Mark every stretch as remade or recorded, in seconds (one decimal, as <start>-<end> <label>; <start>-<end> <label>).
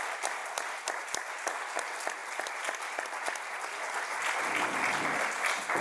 0.0-5.8 recorded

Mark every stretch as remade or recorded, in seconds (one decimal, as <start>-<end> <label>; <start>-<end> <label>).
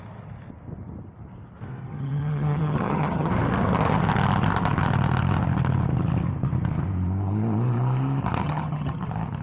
0.0-1.8 recorded; 1.8-3.3 remade; 3.3-8.4 recorded; 8.4-9.0 remade; 9.0-9.4 recorded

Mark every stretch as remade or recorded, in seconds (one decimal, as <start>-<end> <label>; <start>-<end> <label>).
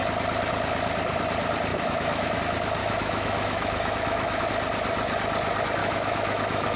0.0-1.7 recorded; 1.7-2.4 remade; 2.4-2.8 recorded; 2.8-4.4 remade; 4.4-5.8 recorded; 5.8-6.8 remade